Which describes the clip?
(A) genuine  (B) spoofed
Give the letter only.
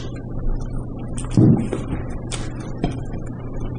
A